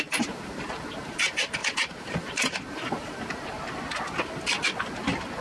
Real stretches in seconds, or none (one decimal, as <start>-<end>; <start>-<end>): 0.0-1.6; 3.9-5.4

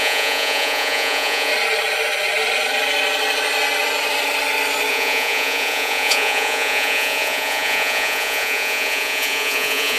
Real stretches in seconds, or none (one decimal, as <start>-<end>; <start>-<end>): 1.5-4.9

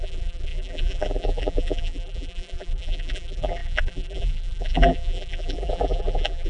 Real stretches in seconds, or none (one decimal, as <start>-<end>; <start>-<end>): none

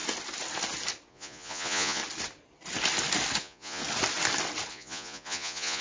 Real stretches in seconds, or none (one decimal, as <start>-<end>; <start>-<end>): 0.0-1.1; 2.0-3.4; 3.8-4.7

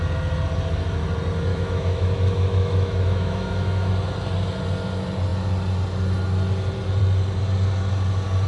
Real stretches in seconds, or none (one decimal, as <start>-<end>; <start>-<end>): 0.0-1.5; 3.9-8.5

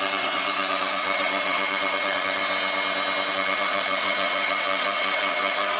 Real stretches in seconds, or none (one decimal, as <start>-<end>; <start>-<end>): 2.4-3.3

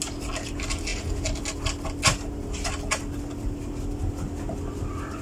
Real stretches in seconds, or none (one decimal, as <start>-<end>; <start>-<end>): 0.0-5.2